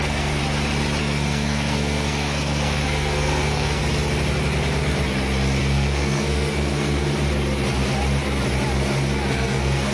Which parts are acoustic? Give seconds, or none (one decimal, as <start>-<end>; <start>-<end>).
0.4-1.0; 3.8-5.6; 7.1-9.3